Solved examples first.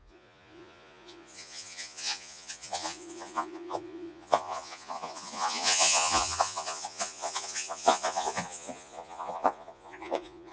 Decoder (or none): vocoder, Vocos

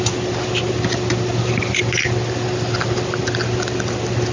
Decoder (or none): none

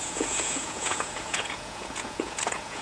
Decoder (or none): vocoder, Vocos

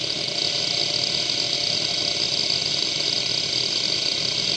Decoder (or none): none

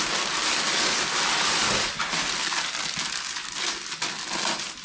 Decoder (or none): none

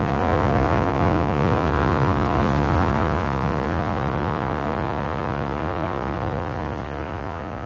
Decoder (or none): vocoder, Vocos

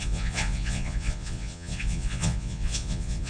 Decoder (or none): vocoder, Vocos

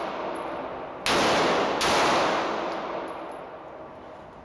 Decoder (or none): none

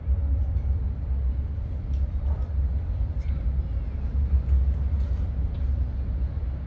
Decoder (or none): none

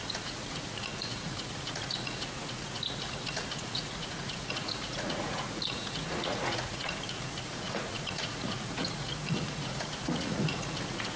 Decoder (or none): vocoder, Vocos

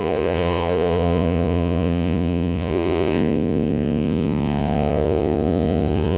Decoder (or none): vocoder, Vocos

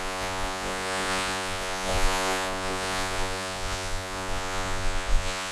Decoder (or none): vocoder, Vocos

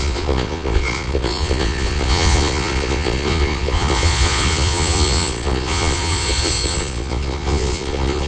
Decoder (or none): vocoder, Vocos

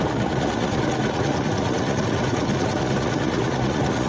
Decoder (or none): vocoder, Vocos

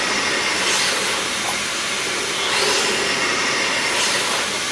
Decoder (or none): none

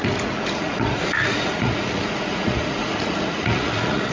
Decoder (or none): vocoder, Vocos